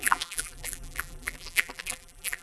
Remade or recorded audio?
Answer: remade